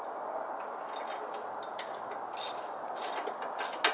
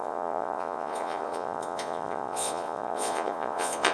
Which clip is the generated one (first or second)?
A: second